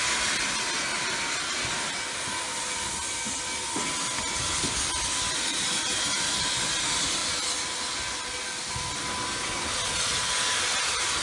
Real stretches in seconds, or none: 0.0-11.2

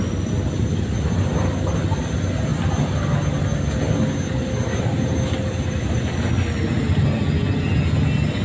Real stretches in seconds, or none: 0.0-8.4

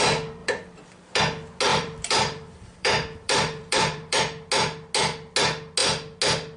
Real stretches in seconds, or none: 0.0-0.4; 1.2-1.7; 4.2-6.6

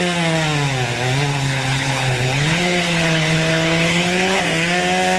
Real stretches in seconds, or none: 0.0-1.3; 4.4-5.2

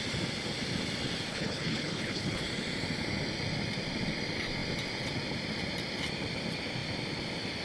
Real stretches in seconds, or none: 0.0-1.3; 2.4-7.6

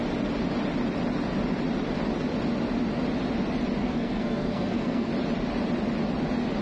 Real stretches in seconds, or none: 0.0-3.8; 5.1-6.6

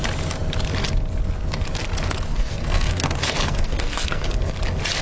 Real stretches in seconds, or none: 0.0-2.3; 4.5-5.0

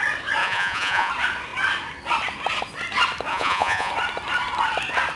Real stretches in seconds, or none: 0.0-0.4; 1.1-3.3; 3.9-5.2